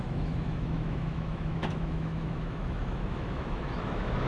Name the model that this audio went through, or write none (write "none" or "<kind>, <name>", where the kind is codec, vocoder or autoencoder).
autoencoder, DAC-VAE